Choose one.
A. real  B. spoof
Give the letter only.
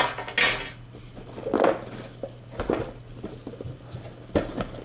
A